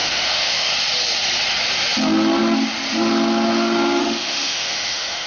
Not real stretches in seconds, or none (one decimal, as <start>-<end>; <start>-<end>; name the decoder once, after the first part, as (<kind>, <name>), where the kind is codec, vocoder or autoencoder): 0.0-0.7 (autoencoder, DAC-VAE); 4.0-5.3